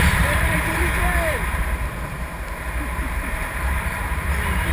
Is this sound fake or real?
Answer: fake